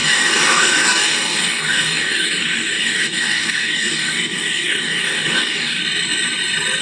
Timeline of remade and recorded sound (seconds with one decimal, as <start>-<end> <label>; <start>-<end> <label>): 0.0-5.8 remade; 5.8-6.8 recorded